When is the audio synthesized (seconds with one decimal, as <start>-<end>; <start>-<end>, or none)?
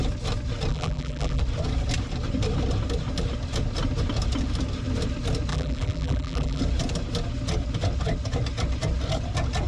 0.7-1.4; 5.5-6.6